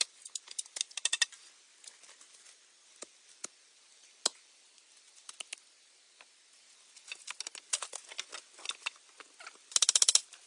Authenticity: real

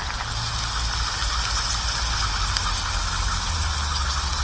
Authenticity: real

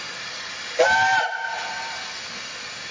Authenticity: real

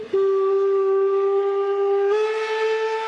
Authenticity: real